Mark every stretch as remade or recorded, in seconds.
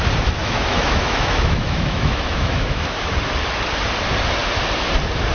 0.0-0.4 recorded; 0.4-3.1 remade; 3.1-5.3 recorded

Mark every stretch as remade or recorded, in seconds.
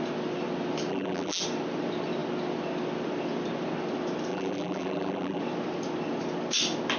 0.0-0.9 recorded; 0.9-1.4 remade; 1.4-4.3 recorded; 4.3-5.4 remade; 5.4-7.0 recorded